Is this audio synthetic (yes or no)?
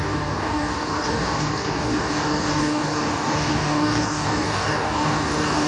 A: yes